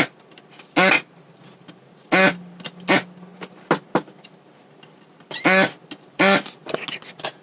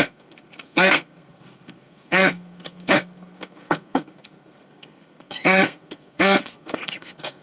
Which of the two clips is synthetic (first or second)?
second